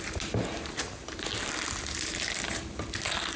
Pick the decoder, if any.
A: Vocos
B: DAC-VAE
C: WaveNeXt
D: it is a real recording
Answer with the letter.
D